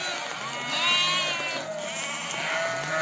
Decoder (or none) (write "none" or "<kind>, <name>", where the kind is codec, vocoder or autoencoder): none